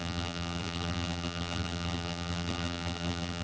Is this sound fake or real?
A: fake